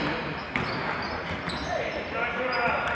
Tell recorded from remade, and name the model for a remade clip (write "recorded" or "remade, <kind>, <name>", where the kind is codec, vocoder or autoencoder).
recorded